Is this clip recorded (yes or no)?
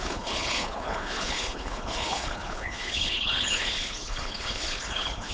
no